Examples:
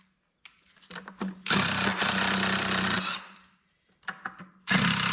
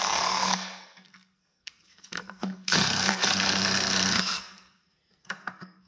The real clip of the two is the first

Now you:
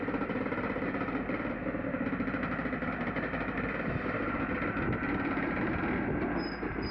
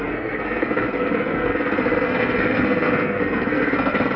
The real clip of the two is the first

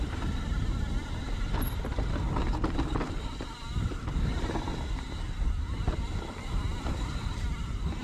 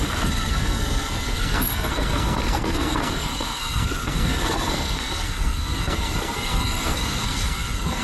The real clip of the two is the first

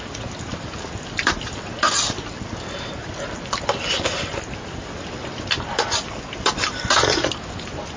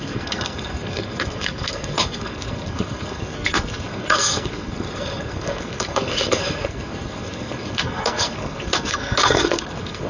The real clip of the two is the first